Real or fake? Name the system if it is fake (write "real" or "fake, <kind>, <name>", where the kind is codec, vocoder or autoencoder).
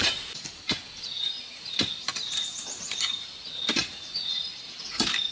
real